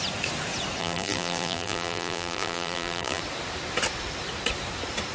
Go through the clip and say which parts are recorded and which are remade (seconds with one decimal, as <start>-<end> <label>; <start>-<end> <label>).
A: 0.0-0.8 recorded; 0.8-3.2 remade; 3.2-5.1 recorded